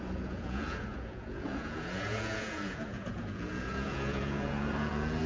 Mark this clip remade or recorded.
remade